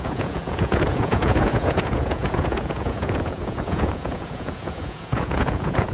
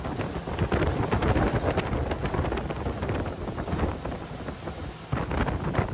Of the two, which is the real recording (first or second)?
second